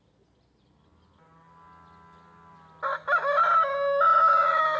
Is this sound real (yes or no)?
yes